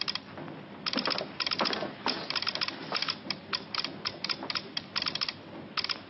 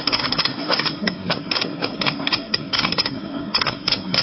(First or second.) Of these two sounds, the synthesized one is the second